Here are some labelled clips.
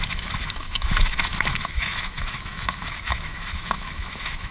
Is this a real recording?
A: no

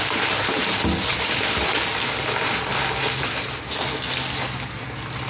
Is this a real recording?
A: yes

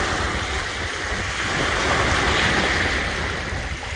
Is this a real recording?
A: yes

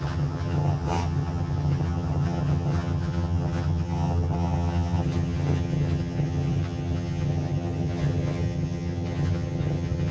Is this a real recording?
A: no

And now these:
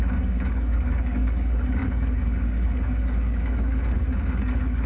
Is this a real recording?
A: no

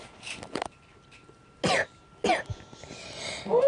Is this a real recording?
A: yes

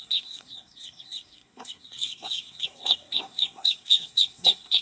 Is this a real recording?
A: no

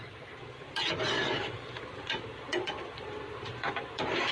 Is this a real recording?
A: no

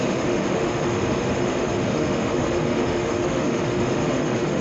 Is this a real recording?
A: no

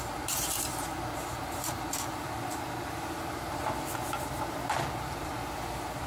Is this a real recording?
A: no